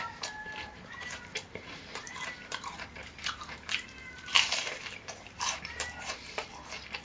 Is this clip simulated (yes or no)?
yes